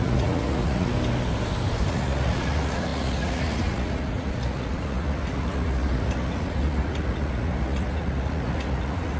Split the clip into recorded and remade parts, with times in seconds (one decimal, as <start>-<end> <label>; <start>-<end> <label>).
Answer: 0.0-0.9 remade; 0.9-1.9 recorded; 1.9-9.2 remade